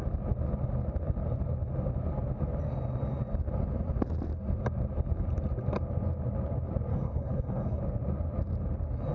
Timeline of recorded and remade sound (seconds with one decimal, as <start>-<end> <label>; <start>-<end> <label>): 0.0-6.9 recorded; 6.9-7.8 remade; 7.8-9.1 recorded